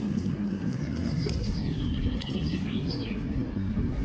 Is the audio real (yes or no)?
no